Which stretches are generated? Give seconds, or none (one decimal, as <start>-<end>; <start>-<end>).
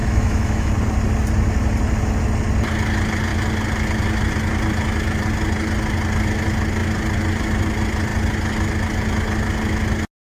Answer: 0.0-0.7